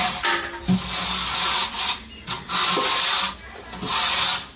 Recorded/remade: recorded